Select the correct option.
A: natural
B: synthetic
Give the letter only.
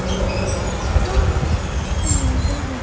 A